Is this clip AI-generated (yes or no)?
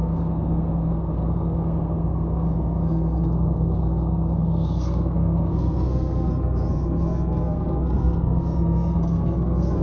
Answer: yes